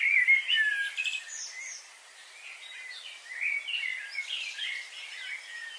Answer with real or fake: real